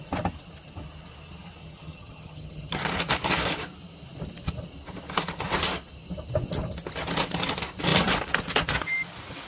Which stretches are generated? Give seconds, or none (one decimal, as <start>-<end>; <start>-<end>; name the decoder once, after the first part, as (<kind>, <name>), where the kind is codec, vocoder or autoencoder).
1.6-2.8 (vocoder, HiFi-GAN)